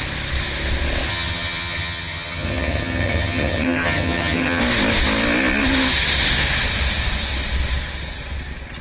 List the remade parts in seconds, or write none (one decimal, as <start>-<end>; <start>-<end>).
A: 1.1-4.6